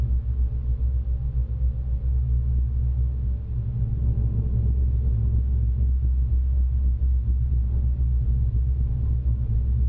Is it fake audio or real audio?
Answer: real